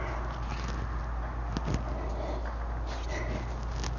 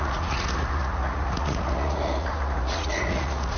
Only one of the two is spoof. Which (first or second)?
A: second